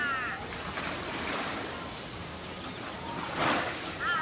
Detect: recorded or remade recorded